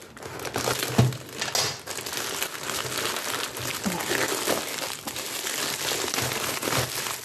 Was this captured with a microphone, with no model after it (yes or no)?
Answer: yes